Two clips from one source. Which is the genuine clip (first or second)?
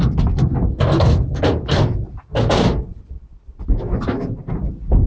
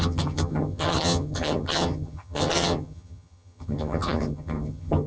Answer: first